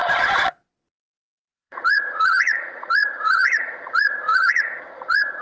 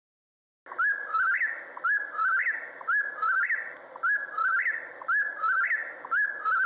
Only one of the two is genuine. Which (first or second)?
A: second